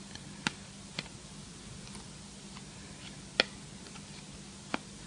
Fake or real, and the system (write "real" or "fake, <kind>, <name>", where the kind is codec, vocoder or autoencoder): real